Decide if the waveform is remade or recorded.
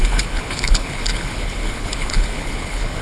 remade